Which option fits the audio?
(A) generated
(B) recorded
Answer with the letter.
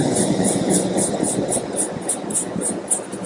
A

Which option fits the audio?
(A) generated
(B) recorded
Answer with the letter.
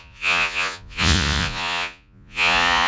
A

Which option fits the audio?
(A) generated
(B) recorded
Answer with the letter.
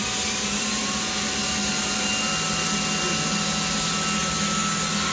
B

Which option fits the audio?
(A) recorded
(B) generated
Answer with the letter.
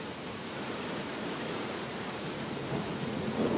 B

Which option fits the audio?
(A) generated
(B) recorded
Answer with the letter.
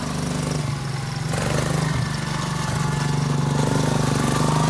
B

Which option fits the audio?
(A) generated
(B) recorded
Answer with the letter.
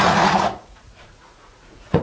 A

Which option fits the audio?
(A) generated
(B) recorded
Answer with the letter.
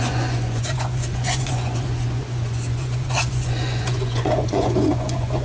A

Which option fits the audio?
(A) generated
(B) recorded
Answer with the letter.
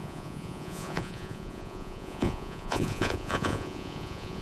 A